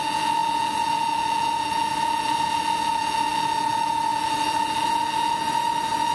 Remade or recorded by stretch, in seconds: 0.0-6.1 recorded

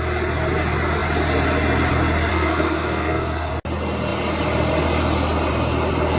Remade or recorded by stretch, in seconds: 0.0-2.3 recorded; 2.3-3.5 remade; 3.5-6.2 recorded

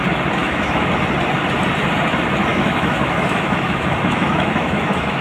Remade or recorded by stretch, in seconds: 0.0-0.4 recorded; 0.4-0.9 remade; 0.9-2.5 recorded; 2.5-5.2 remade